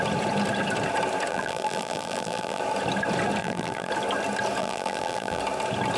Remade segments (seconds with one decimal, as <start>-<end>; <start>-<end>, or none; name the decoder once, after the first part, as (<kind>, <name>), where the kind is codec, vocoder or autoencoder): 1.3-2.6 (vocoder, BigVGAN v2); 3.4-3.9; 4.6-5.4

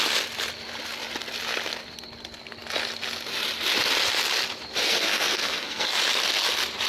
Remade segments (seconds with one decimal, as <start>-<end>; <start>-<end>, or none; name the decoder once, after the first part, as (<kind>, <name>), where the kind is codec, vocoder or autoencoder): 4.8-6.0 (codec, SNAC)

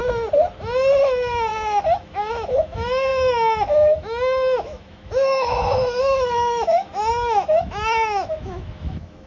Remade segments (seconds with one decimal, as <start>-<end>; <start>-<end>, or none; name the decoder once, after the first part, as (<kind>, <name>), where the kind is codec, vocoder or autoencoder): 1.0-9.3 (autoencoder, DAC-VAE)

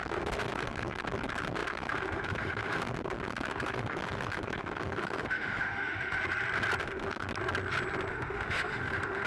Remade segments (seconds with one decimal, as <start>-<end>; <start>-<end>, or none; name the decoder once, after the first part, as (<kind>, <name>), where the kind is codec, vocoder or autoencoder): 0.0-6.2 (autoencoder, DAC-VAE); 6.8-7.3; 8.1-9.3

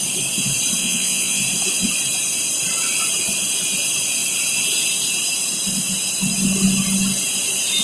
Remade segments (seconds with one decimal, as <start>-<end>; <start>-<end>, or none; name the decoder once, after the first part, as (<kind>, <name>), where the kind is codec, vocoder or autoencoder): 0.8-1.4 (vocoder, Vocos)